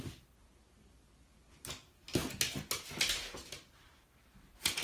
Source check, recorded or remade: recorded